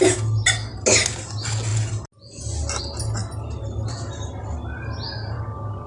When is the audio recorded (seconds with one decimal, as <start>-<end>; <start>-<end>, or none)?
0.0-5.9